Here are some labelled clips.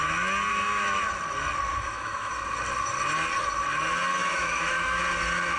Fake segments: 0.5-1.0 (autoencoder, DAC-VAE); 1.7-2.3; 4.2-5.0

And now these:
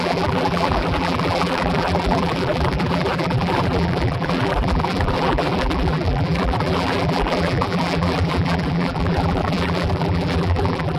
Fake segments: 0.0-11.0 (vocoder, BigVGAN v2)

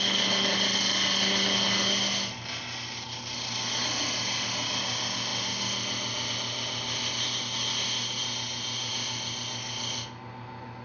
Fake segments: none